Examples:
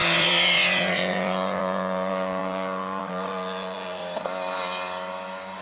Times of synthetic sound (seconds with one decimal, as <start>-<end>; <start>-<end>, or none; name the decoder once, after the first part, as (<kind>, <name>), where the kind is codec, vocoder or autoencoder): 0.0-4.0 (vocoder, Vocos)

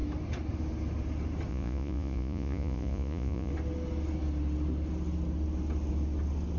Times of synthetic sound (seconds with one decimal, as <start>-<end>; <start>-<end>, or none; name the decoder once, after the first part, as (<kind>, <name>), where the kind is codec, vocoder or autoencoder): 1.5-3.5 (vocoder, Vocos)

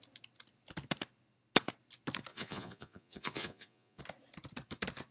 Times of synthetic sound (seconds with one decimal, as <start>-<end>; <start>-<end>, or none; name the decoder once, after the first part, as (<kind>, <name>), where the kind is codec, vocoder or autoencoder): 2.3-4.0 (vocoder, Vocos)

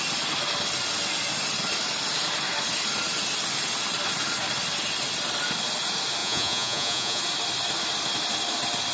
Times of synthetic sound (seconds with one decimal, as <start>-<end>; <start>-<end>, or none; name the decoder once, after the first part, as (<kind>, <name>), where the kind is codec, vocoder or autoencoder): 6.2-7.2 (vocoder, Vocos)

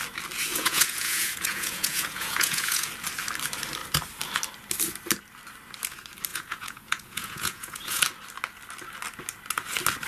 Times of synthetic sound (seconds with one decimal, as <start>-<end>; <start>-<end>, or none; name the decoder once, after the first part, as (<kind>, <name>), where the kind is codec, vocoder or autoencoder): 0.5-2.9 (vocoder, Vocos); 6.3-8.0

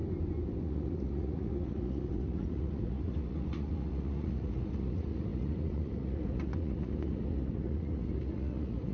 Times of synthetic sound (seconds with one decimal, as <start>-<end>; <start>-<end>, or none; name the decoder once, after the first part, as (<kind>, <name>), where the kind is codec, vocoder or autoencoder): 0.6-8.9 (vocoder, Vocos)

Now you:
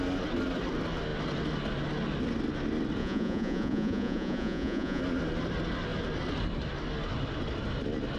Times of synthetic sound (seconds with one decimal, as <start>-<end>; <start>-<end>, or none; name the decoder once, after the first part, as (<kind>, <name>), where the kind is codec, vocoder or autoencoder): 3.0-5.0 (vocoder, Vocos)